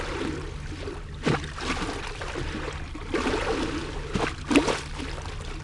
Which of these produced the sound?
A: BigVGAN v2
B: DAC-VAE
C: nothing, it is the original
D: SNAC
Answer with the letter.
C